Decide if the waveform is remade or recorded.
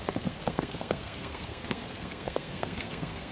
remade